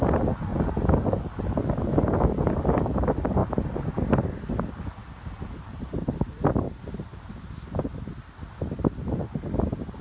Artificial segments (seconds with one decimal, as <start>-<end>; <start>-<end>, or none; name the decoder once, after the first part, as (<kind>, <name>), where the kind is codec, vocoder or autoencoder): none